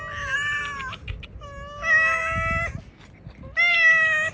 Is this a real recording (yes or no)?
yes